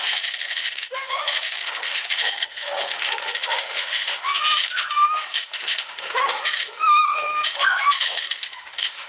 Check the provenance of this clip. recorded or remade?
remade